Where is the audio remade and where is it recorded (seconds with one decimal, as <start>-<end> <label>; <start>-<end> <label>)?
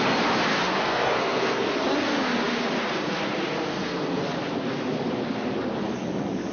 0.0-0.5 recorded; 0.5-1.7 remade; 1.7-3.7 recorded; 3.7-4.2 remade; 4.2-6.5 recorded